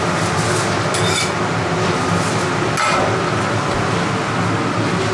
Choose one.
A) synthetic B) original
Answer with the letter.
B